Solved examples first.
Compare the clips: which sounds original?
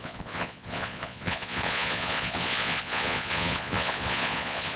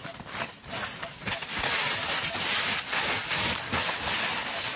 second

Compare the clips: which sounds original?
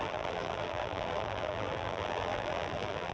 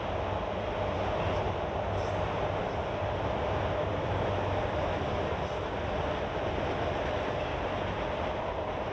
second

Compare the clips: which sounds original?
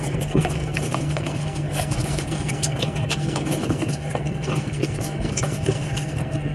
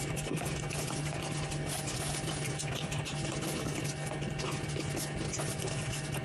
second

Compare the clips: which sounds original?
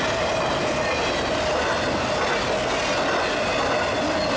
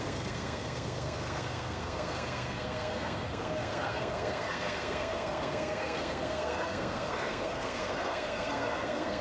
first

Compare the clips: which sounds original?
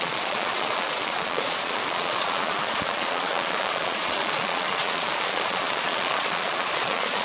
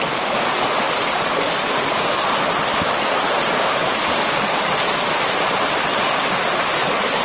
second